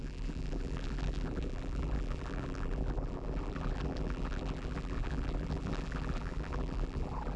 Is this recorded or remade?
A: remade